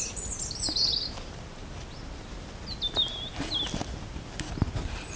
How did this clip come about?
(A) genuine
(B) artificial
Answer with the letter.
A